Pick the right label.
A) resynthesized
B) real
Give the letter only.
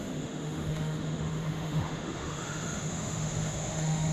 A